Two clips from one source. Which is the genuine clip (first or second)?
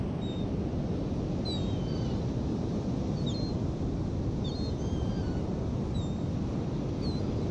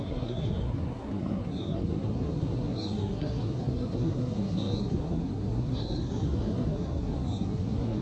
first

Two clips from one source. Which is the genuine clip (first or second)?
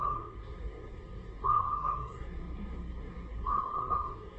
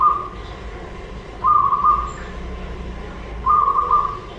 second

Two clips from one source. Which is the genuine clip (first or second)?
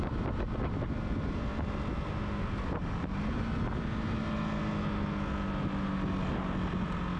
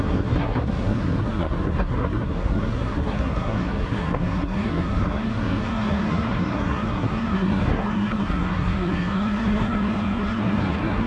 first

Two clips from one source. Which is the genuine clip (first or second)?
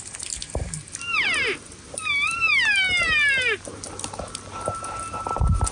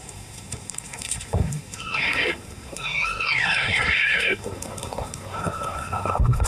first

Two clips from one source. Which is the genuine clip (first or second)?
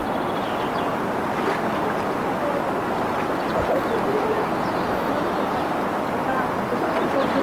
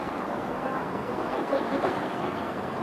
first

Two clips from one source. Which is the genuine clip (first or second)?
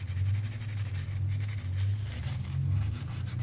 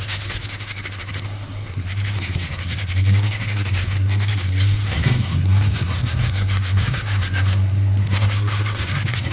first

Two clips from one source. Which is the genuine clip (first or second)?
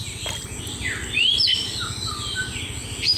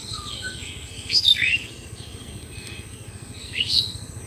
first